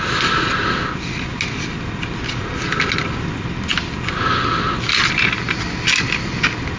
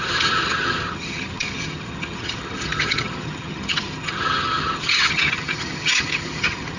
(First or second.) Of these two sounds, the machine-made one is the second